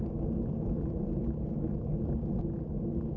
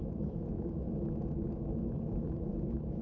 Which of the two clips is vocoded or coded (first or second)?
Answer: second